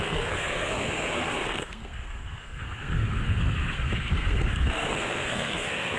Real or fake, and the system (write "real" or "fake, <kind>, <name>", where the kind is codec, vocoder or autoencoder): fake, codec, SNAC